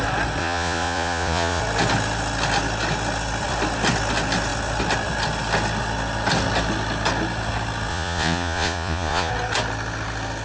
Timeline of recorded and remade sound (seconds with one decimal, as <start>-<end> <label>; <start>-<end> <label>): 0.0-0.4 recorded; 0.4-1.6 remade; 1.6-7.9 recorded; 7.9-9.3 remade; 9.3-10.4 recorded